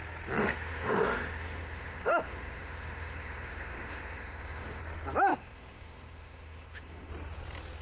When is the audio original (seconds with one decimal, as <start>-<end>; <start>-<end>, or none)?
0.0-0.4; 4.8-5.3; 7.1-7.8